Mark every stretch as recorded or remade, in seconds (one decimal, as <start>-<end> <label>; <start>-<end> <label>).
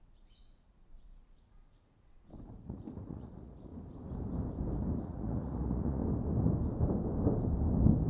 0.0-3.7 remade; 3.7-5.0 recorded; 5.0-6.0 remade; 6.0-8.1 recorded